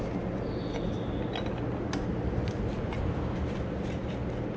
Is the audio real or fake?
real